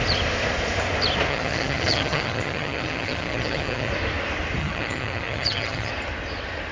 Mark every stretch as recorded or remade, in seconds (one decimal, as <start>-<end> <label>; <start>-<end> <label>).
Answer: 0.0-1.3 recorded; 1.3-3.9 remade; 3.9-4.6 recorded; 4.6-5.9 remade; 5.9-6.7 recorded